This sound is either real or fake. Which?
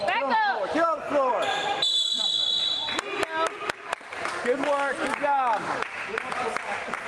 real